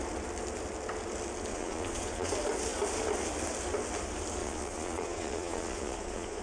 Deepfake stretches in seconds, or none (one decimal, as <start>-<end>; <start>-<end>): 1.5-2.3; 4.4-6.4